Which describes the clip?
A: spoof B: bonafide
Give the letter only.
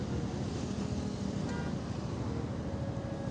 B